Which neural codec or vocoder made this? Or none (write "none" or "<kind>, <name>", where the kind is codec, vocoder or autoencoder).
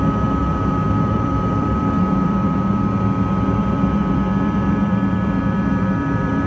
vocoder, BigVGAN v2